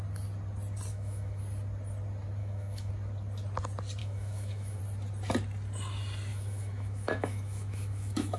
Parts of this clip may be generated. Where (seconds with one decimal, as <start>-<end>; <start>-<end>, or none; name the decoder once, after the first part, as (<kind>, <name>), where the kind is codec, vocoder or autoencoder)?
0.9-1.4 (autoencoder, DAC-VAE); 2.4-2.9; 4.0-4.8; 6.3-8.4